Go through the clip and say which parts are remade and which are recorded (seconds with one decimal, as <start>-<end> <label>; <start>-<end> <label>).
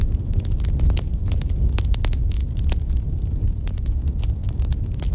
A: 0.0-2.4 recorded; 2.4-3.1 remade; 3.1-5.1 recorded